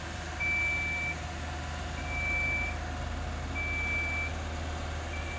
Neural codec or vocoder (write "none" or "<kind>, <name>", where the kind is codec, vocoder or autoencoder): none